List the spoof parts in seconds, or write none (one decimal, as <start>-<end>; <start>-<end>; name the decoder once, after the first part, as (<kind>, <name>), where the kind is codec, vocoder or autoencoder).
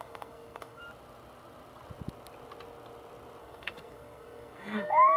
0.0-0.8 (codec, SNAC); 3.4-5.2